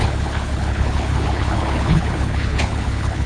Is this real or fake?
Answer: fake